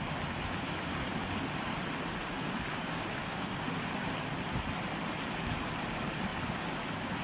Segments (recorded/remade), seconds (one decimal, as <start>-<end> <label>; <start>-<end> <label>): 0.0-2.7 recorded; 2.7-3.7 remade; 3.7-7.2 recorded